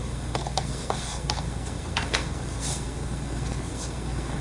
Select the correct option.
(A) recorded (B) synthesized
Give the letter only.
B